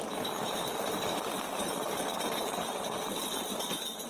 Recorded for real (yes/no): no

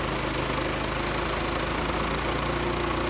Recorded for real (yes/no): yes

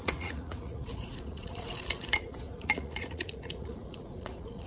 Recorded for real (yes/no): no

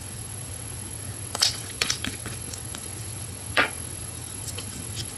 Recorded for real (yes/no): no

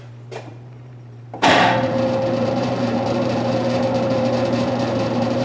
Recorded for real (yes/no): no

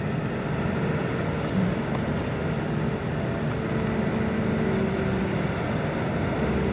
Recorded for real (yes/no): yes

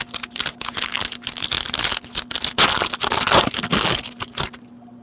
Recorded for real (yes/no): yes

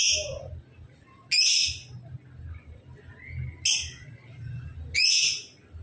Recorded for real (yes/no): yes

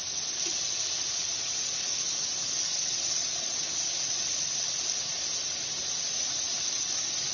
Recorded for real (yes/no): yes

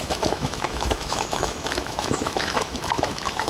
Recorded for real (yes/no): no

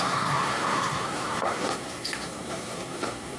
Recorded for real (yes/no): no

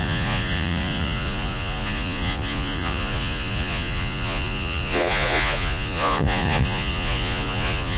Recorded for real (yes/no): no